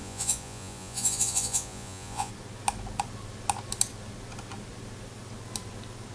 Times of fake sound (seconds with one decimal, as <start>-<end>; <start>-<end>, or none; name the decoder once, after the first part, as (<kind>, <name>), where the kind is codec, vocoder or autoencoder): 0.0-2.3 (vocoder, Vocos)